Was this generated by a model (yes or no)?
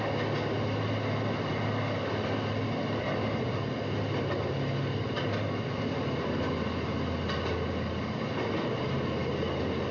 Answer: no